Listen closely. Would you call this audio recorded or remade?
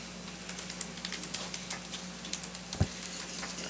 recorded